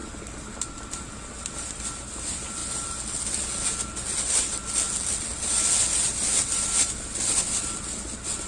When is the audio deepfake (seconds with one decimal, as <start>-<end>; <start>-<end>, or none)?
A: none